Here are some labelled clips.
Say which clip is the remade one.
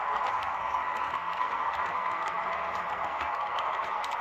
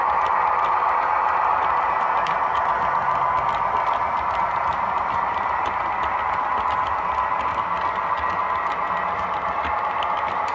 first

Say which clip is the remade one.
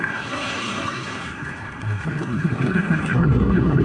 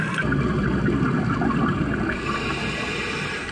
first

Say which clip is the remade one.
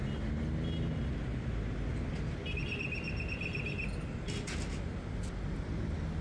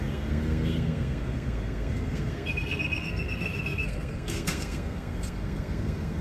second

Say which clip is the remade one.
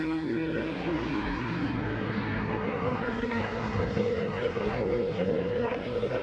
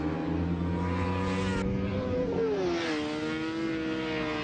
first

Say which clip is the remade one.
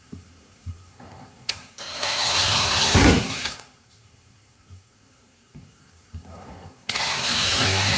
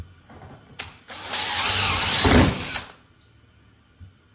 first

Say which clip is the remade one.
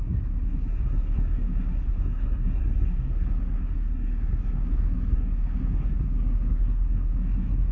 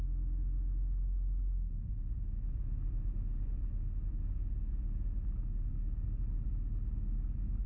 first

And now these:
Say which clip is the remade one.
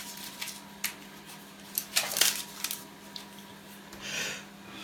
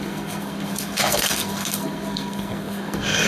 second